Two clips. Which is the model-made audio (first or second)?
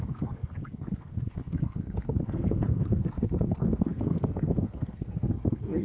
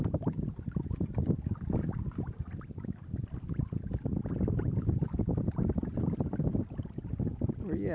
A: first